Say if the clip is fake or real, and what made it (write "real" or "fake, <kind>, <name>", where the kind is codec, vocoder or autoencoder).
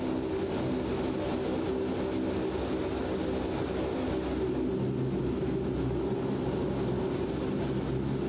real